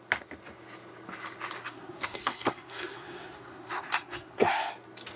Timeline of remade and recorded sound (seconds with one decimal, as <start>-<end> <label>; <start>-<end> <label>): 0.0-1.6 recorded; 1.6-4.7 remade; 4.7-5.2 recorded